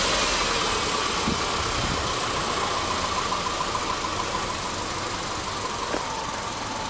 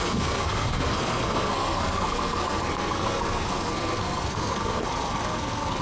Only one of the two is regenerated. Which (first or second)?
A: second